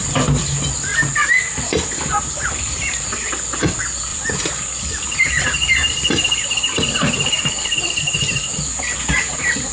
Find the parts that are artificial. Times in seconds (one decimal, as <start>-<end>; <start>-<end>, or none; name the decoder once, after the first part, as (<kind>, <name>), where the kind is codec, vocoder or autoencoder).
4.1-8.0 (vocoder, BigVGAN v2)